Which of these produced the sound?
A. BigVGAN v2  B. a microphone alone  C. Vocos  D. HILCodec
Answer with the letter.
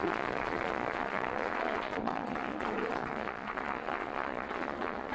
C